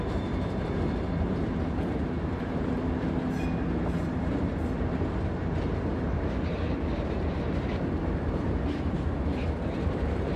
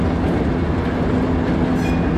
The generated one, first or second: first